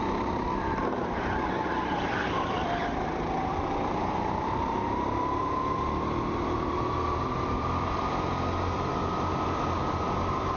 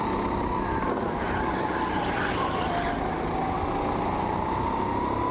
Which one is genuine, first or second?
second